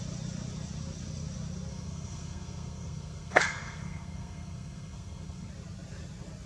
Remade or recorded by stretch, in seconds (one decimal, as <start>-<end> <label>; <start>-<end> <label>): 0.0-1.7 recorded; 1.7-5.5 remade; 5.5-6.5 recorded